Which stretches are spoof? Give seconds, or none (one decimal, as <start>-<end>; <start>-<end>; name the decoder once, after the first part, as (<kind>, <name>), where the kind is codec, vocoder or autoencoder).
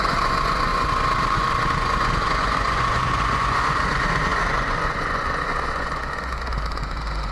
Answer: 0.0-7.3 (vocoder, Vocos)